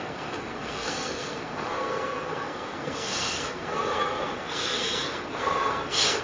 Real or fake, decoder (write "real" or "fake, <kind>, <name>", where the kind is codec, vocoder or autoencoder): fake, codec, SNAC